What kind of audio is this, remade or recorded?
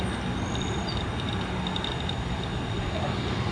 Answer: recorded